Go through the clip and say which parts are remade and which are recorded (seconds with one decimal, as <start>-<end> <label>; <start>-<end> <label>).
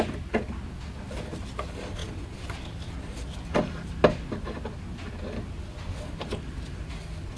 0.0-7.4 recorded